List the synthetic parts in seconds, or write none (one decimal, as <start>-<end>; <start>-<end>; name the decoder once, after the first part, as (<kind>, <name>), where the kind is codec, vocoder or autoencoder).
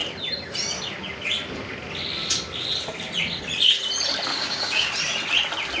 4.3-4.9 (codec, DAC)